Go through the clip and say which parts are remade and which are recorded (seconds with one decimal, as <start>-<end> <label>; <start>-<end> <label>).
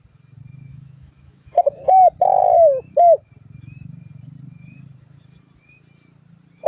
0.0-0.7 recorded; 0.7-1.9 remade; 1.9-2.4 recorded; 2.4-3.3 remade; 3.3-6.7 recorded